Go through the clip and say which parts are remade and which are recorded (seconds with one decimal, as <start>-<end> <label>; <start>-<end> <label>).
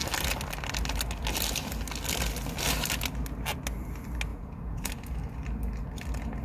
0.0-4.3 recorded; 4.3-4.9 remade; 4.9-6.4 recorded